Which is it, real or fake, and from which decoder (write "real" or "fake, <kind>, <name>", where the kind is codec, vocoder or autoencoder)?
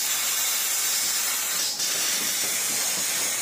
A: real